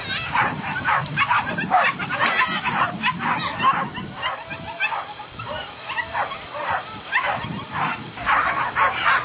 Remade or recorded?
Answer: recorded